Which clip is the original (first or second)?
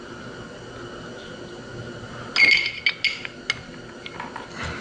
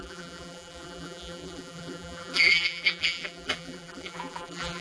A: first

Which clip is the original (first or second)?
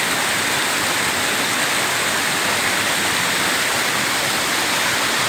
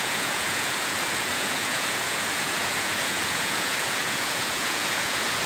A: first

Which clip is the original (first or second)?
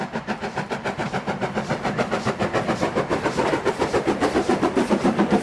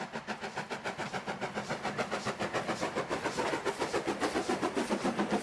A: second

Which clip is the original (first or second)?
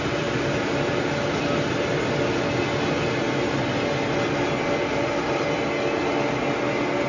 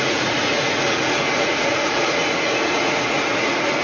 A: first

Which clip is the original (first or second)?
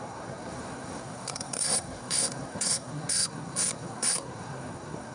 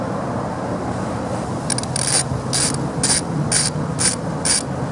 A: second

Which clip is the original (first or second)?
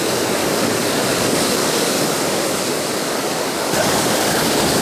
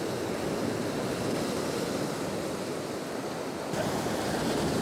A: second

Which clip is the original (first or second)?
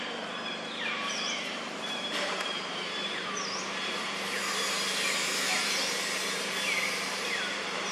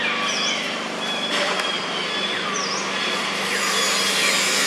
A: second